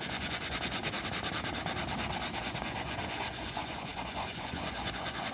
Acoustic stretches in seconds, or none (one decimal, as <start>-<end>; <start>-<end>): 0.8-2.4